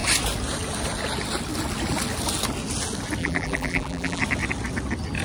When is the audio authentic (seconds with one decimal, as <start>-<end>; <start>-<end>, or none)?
0.0-3.2; 4.2-5.2